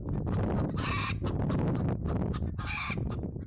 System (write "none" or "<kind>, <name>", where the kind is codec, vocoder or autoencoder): none